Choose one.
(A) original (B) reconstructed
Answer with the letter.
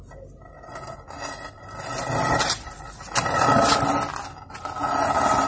A